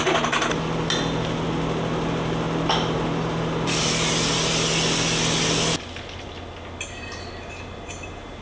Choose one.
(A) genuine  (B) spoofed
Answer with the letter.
A